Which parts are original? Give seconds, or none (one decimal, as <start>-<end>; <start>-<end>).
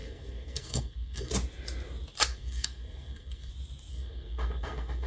1.3-2.3; 3.5-3.9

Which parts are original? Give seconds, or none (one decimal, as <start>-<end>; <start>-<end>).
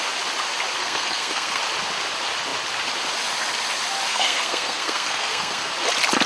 0.0-0.8; 1.6-4.1; 5.7-6.3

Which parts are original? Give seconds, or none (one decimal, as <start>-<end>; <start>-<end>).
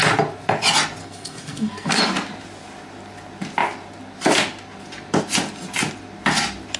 0.0-1.0; 2.0-6.8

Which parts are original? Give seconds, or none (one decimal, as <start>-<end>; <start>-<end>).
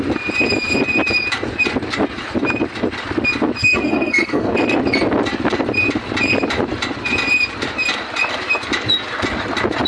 0.0-3.6; 4.5-9.9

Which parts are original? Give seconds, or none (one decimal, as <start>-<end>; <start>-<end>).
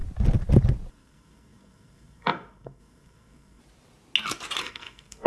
0.0-0.9; 3.6-4.6